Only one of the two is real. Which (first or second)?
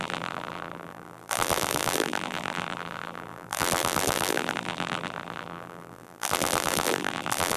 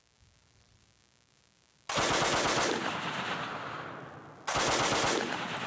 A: second